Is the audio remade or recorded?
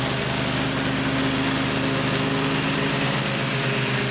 recorded